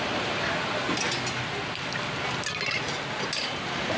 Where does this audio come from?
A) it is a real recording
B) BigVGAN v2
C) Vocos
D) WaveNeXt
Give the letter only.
A